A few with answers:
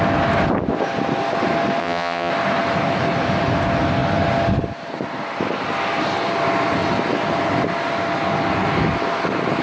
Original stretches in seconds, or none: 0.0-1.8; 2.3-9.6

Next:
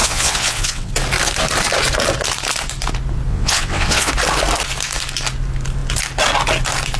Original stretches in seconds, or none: 0.9-3.3; 4.1-7.0